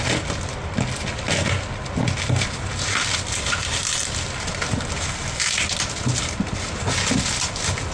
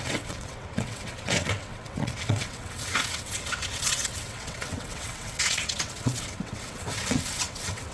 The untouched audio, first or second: first